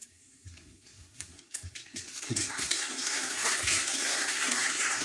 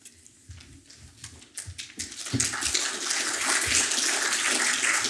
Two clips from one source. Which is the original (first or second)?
second